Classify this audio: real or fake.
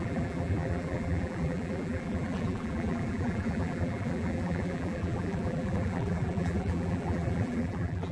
fake